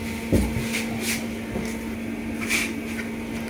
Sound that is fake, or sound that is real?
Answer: real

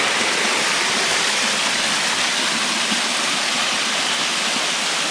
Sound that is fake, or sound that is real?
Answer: real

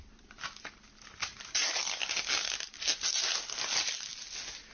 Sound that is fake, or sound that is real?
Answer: real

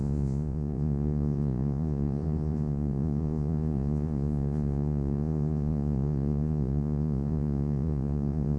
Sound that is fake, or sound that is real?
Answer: fake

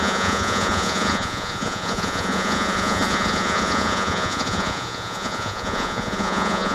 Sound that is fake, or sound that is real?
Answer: fake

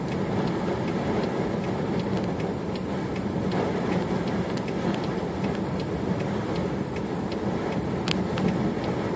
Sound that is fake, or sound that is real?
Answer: real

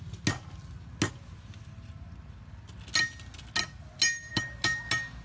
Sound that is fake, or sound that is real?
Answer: real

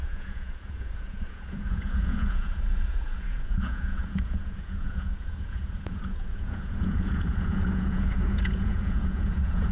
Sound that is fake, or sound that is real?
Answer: fake